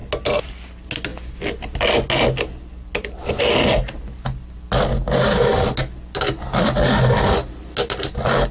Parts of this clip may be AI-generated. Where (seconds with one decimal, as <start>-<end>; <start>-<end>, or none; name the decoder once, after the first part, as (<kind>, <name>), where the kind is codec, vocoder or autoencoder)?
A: none